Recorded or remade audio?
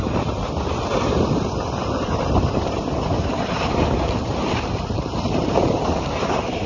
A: remade